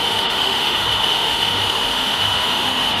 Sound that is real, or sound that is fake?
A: fake